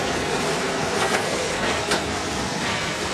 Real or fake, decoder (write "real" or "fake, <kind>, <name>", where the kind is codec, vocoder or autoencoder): fake, codec, SNAC